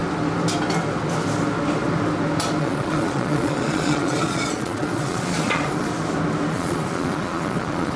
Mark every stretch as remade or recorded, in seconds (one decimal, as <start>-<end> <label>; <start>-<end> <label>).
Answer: 0.0-2.6 recorded; 2.6-5.9 remade; 5.9-6.5 recorded; 6.5-8.0 remade